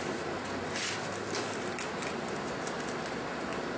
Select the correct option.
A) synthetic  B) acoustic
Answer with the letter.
B